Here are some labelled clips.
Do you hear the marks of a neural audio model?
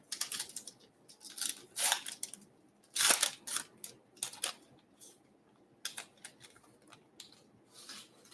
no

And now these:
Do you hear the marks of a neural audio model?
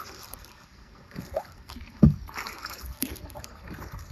yes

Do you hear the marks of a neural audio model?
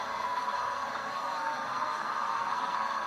yes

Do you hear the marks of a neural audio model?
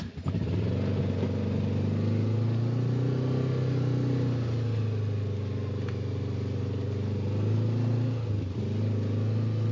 no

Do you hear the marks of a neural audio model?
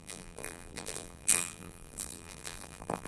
yes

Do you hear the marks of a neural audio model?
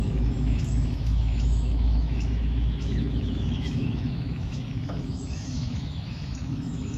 yes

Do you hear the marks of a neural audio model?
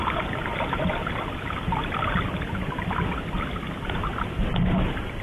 no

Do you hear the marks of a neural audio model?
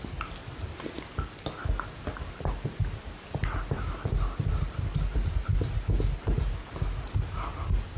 no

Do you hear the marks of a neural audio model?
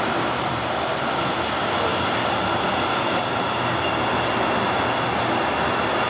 no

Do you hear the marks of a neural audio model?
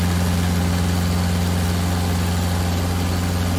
no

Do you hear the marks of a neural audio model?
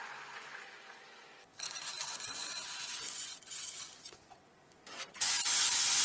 yes